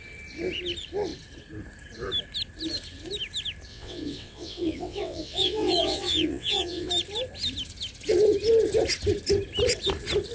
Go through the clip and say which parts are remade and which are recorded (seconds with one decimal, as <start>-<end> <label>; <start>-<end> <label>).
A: 0.0-3.7 recorded; 3.7-6.9 remade; 6.9-10.3 recorded

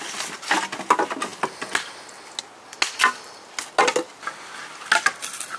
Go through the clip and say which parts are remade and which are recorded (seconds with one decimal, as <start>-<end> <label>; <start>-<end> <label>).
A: 0.0-5.6 recorded

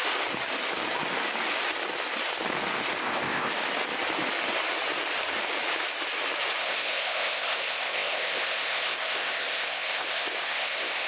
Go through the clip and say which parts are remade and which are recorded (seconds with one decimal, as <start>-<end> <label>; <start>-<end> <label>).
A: 0.0-3.0 recorded; 3.0-3.5 remade; 3.5-6.6 recorded; 6.6-11.1 remade

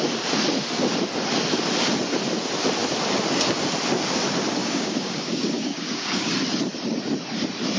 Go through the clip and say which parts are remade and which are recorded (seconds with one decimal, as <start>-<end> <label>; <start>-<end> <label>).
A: 0.0-4.6 recorded; 4.6-6.3 remade; 6.3-7.8 recorded

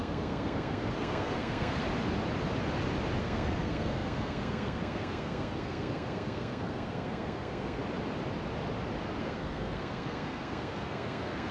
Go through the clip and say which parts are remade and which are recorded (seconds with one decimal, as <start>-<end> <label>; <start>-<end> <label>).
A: 0.0-1.8 remade; 1.8-3.2 recorded; 3.2-7.8 remade; 7.8-9.2 recorded; 9.2-11.5 remade